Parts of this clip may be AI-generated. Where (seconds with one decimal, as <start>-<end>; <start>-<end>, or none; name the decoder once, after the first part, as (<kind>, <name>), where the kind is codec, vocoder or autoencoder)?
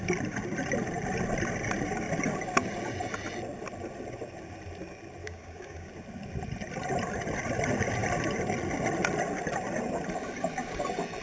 5.2-5.9 (codec, DAC)